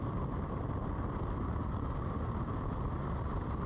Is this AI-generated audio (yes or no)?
no